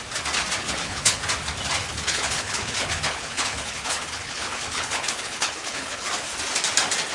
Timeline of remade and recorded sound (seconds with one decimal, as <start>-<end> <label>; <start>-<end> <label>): 0.0-0.6 recorded; 0.6-1.2 remade; 1.2-1.8 recorded; 1.8-6.1 remade; 6.1-7.1 recorded

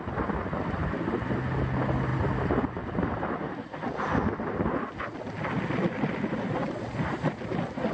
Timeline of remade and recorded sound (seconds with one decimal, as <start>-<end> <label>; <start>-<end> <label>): 0.0-7.9 recorded

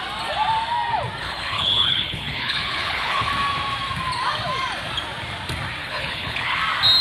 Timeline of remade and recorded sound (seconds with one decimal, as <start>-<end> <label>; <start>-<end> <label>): 0.0-1.2 recorded; 1.2-3.3 remade; 3.3-5.8 recorded; 5.8-6.6 remade; 6.6-7.0 recorded

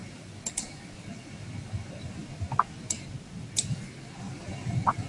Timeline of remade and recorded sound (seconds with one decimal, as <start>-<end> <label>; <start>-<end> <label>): 0.0-5.1 recorded

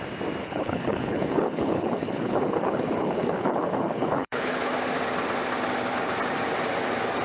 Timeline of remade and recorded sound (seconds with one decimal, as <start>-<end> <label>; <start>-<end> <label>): 0.0-0.4 recorded; 0.4-4.7 remade; 4.7-7.2 recorded

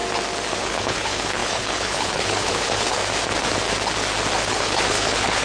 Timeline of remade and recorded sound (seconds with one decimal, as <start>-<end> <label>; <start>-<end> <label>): 0.0-0.6 recorded; 0.6-3.0 remade; 3.0-4.5 recorded; 4.5-5.4 remade